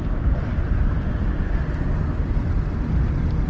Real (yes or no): yes